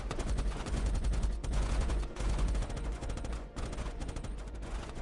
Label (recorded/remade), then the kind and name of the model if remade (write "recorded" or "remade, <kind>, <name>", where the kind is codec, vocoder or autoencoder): remade, vocoder, Vocos